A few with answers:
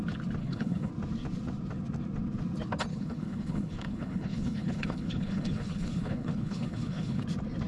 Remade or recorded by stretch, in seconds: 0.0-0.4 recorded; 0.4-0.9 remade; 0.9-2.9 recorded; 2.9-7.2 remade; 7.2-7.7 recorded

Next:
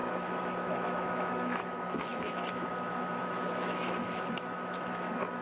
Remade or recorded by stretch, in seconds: 0.0-5.4 remade

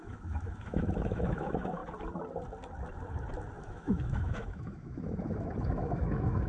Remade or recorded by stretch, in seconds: 0.0-1.8 remade; 1.8-3.6 recorded; 3.6-6.5 remade

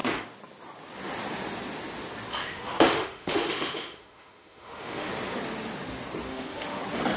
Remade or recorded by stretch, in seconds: 0.0-2.4 recorded; 2.4-5.1 remade; 5.1-6.3 recorded; 6.3-6.8 remade; 6.8-7.2 recorded

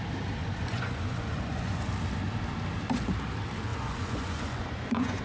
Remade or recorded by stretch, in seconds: 0.0-0.4 recorded; 0.4-1.9 remade; 1.9-3.7 recorded; 3.7-5.2 remade

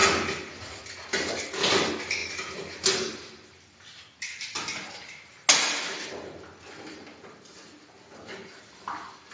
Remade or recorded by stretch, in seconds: 0.0-9.3 recorded